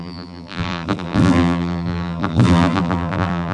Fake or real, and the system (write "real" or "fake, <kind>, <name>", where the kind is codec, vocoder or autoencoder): fake, vocoder, BigVGAN v2